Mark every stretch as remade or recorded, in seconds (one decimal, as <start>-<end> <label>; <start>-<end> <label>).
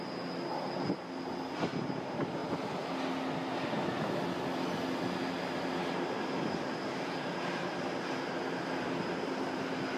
0.0-10.0 recorded